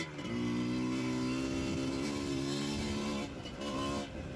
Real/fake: real